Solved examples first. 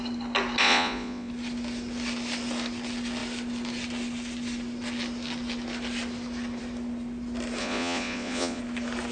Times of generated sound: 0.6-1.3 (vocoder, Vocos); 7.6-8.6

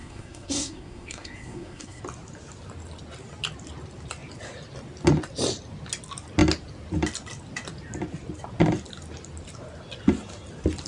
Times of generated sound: 0.0-2.0 (codec, SNAC)

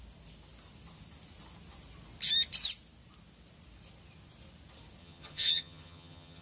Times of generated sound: 5.0-6.4 (vocoder, HiFi-GAN)

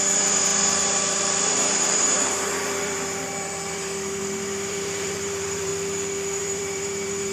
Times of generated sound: 0.0-5.7 (vocoder, BigVGAN v2); 6.4-7.3